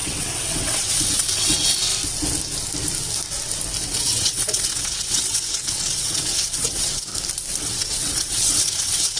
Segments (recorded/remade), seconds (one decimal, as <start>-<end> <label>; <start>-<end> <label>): 0.0-1.9 remade; 1.9-3.8 recorded; 3.8-7.1 remade; 7.1-7.6 recorded; 7.6-9.2 remade

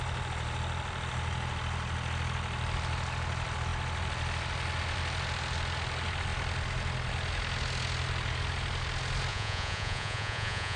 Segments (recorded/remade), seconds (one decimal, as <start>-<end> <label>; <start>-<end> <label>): 0.0-9.3 recorded; 9.3-10.8 remade

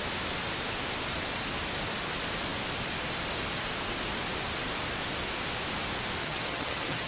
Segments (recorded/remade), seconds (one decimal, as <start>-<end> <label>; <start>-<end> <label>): 0.0-6.2 recorded; 6.2-7.1 remade

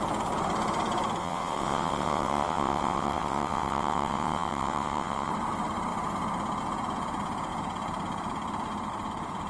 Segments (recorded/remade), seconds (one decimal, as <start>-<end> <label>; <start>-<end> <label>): 0.0-1.2 recorded; 1.2-5.3 remade; 5.3-9.5 recorded